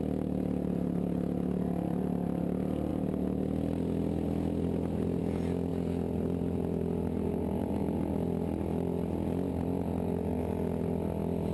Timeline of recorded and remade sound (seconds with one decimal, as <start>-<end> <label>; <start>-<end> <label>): 0.0-11.5 recorded